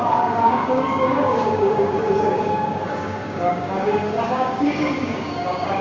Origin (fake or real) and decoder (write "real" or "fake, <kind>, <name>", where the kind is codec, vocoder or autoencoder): fake, codec, DAC